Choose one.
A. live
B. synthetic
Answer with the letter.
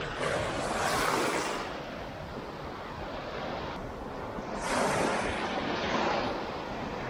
A